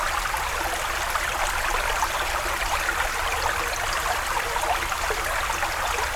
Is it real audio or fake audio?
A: real